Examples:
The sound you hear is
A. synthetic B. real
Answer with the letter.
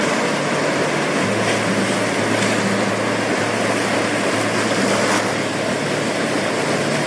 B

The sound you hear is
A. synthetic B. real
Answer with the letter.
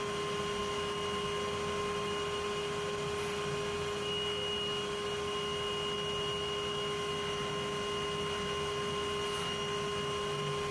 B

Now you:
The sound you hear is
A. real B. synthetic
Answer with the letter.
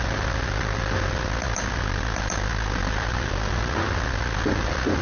A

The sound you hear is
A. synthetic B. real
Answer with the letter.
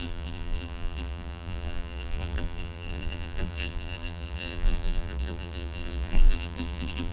A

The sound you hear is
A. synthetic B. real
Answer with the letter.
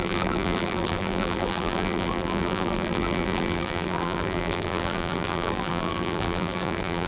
A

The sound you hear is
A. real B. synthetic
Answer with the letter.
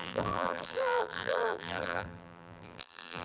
B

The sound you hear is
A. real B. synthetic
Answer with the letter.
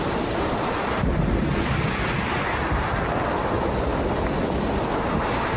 A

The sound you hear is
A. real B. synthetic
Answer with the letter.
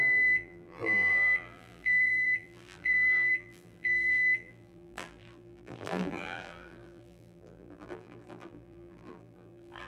B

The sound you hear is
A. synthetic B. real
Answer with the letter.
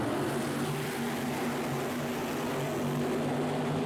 B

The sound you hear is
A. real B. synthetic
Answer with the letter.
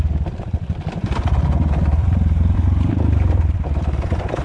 B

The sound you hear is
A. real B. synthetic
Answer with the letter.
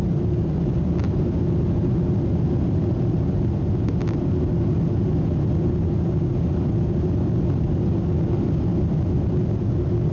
A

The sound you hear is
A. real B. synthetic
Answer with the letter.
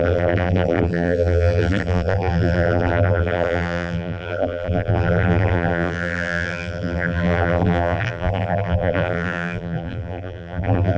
B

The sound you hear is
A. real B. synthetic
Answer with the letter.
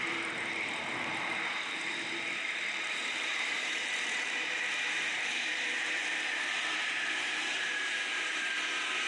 B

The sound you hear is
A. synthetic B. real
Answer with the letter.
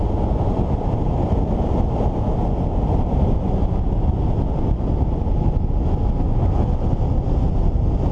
B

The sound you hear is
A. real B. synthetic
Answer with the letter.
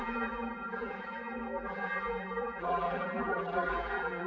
B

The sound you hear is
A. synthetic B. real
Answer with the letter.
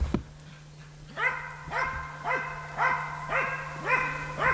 B